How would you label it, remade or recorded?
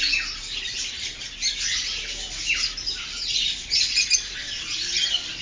recorded